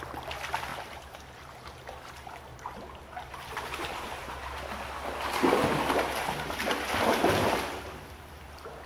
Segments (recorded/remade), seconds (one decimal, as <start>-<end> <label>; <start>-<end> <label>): 0.0-0.7 recorded; 0.7-1.8 remade; 1.8-2.5 recorded; 2.5-4.3 remade; 4.3-7.2 recorded; 7.2-7.7 remade; 7.7-8.9 recorded